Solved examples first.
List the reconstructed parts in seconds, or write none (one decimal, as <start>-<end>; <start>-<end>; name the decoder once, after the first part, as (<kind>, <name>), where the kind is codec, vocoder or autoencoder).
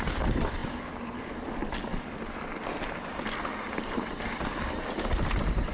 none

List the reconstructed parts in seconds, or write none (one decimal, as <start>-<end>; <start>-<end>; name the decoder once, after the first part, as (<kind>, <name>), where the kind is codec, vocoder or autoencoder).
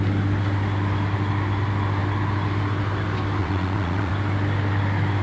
3.4-4.1 (vocoder, Vocos)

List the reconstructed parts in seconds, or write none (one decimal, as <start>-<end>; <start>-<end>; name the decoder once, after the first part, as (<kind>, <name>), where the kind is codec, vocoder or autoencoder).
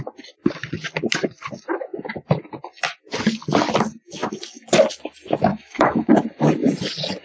5.5-6.1 (autoencoder, DAC-VAE)